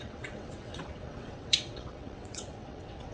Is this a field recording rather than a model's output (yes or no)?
no